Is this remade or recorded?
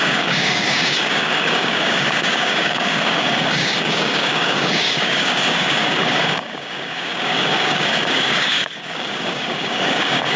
remade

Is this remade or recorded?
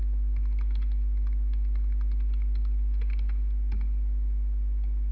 recorded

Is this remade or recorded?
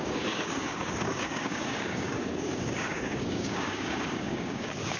remade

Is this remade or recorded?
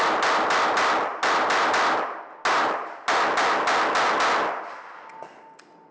recorded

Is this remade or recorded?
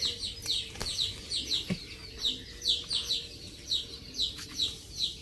recorded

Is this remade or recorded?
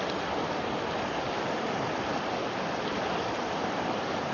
recorded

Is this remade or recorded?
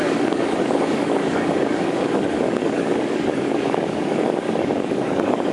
remade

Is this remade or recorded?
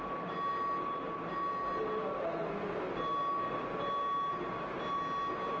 recorded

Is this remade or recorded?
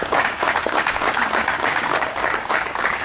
remade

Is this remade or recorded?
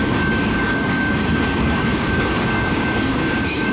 remade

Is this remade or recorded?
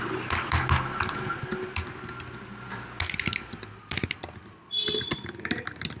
recorded